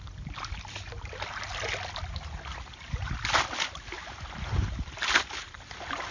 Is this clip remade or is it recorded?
recorded